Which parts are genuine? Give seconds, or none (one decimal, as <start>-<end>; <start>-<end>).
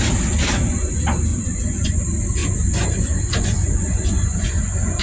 0.0-1.3; 2.0-2.4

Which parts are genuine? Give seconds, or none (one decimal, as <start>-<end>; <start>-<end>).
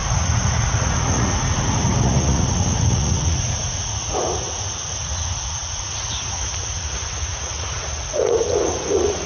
none